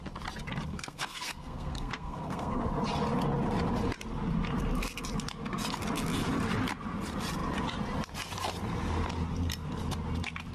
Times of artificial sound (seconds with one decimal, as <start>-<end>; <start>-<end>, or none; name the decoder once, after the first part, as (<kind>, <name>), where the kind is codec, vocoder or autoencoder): 0.7-2.6 (codec, SNAC)